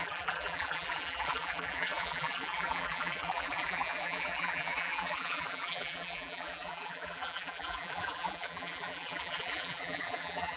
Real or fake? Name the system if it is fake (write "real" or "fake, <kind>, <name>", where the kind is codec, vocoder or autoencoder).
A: fake, vocoder, BigVGAN v2